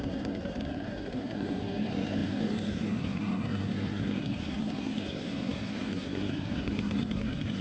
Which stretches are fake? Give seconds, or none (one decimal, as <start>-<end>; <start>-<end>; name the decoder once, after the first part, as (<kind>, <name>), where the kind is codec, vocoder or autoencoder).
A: 0.0-7.6 (codec, SNAC)